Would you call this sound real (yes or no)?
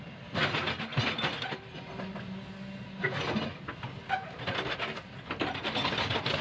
yes